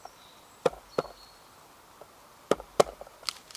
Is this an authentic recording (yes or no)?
yes